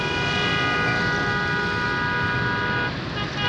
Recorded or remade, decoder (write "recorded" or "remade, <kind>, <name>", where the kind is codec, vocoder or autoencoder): recorded